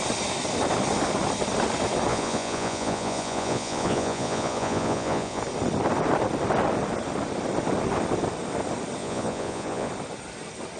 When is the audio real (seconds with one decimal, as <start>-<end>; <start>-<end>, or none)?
0.0-2.1; 5.4-9.0; 9.9-10.8